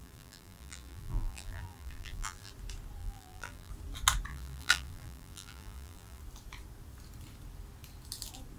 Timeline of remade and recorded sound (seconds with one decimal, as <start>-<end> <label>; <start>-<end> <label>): 0.0-2.5 remade; 2.5-3.0 recorded; 3.0-3.7 remade; 3.7-4.3 recorded; 4.3-6.2 remade; 6.2-8.6 recorded